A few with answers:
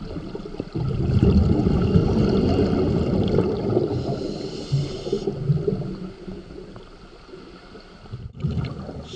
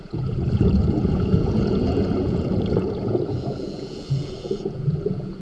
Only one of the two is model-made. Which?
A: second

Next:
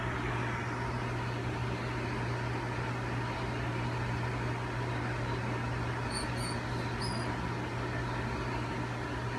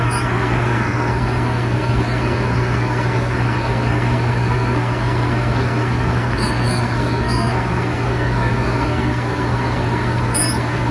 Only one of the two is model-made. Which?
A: second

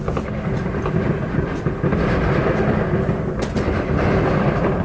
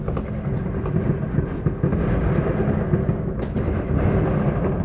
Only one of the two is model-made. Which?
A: first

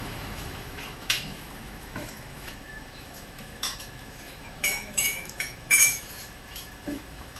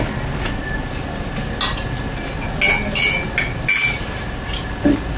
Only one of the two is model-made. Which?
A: first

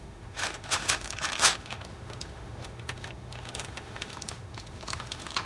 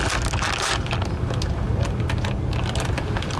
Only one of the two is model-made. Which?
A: first